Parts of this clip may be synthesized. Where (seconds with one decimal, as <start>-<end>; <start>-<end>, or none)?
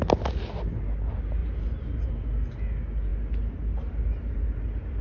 1.4-2.1